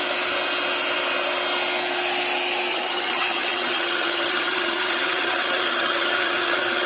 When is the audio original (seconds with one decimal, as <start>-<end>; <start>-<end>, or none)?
0.0-2.7